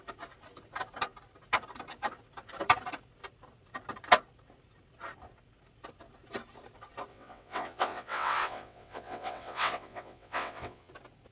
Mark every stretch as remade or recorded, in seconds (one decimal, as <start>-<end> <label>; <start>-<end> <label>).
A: 0.0-7.1 recorded; 7.1-10.9 remade; 10.9-11.3 recorded